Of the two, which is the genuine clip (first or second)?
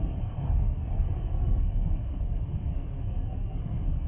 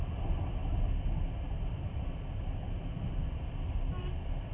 second